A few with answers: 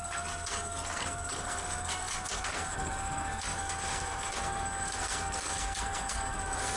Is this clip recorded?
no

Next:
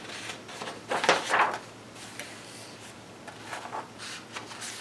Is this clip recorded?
yes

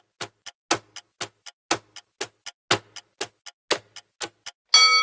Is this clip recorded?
yes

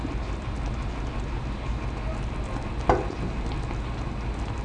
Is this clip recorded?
yes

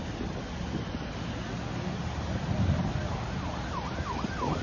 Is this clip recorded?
yes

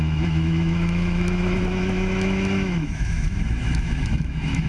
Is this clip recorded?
no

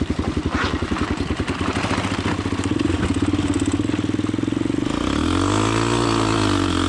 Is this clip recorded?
yes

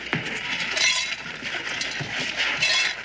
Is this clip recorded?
yes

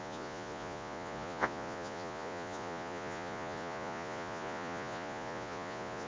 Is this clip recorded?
no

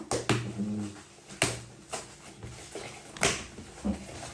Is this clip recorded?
yes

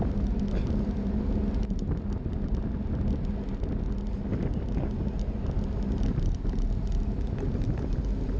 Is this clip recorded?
yes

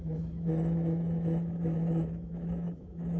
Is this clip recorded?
no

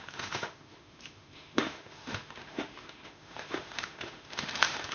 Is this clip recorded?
no